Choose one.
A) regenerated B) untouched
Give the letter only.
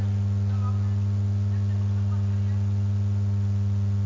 B